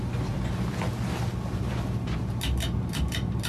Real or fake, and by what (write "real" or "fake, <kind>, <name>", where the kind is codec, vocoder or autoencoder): real